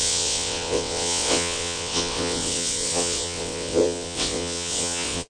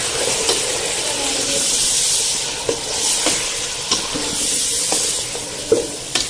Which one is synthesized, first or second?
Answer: first